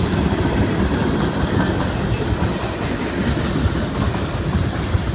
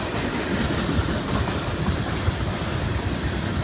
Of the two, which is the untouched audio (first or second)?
first